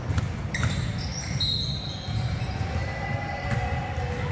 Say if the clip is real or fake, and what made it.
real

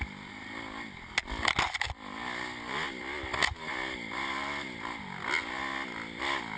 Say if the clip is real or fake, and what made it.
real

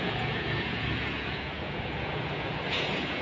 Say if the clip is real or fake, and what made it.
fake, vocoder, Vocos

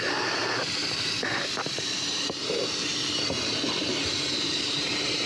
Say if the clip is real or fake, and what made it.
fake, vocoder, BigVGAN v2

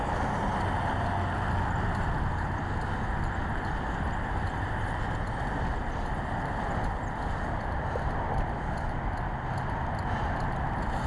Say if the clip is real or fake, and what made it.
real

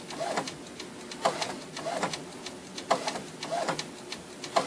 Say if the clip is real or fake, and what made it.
real